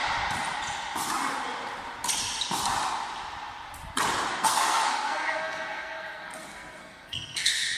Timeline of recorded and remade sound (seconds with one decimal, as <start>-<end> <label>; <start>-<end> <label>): 0.0-4.3 recorded; 4.3-7.8 remade